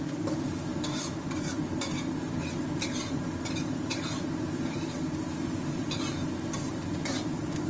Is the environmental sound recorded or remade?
recorded